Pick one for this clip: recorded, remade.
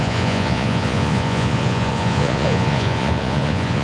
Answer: remade